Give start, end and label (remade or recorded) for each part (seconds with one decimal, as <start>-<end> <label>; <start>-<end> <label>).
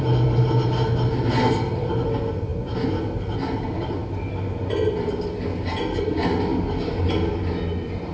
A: 0.0-8.1 recorded